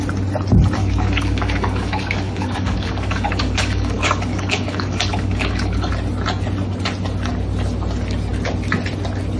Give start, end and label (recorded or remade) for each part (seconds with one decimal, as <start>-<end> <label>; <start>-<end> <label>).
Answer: 0.0-0.8 recorded; 0.8-5.9 remade; 5.9-9.4 recorded